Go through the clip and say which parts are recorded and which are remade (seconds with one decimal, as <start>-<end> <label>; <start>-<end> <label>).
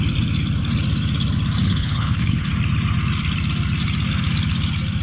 0.0-1.6 recorded; 1.6-2.5 remade; 2.5-5.0 recorded